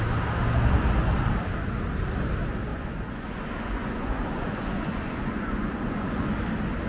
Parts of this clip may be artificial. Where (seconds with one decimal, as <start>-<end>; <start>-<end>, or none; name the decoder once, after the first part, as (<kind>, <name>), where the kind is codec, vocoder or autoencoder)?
2.7-6.2 (vocoder, Vocos)